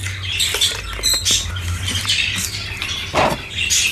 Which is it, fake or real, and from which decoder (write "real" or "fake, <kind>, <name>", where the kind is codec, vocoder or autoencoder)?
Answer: real